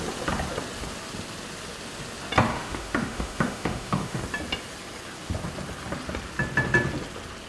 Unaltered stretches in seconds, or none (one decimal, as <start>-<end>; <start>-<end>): 0.0-2.5; 4.2-7.5